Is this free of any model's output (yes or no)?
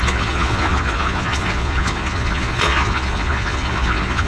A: no